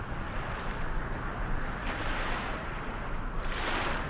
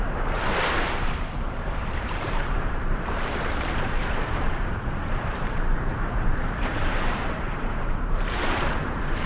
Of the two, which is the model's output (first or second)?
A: second